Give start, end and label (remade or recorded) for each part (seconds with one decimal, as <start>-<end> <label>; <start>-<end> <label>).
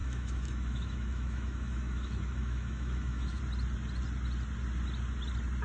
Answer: 0.0-3.4 remade; 3.4-5.6 recorded